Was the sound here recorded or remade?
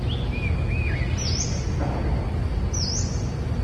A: recorded